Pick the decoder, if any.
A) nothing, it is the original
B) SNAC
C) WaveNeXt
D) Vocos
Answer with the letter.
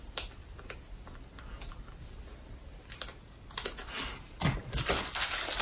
A